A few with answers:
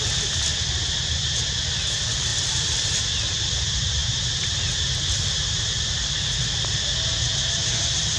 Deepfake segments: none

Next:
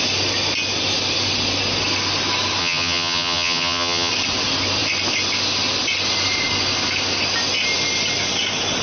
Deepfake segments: 2.6-4.1 (vocoder, HiFi-GAN)

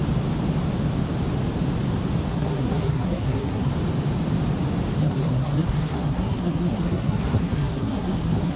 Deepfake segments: 2.3-3.7 (codec, SNAC); 5.0-8.6

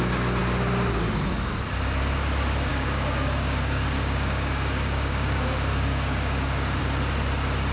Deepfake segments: 2.7-6.8 (codec, DAC)

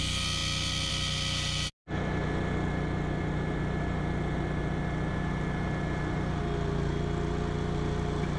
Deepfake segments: none

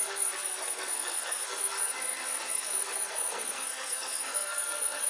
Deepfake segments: 0.0-5.1 (codec, SNAC)

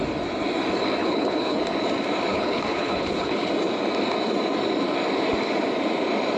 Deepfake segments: 1.0-1.6 (codec, HILCodec); 2.3-3.5

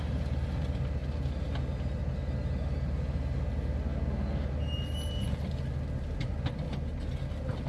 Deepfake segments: none